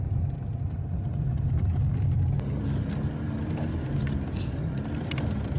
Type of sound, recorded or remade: recorded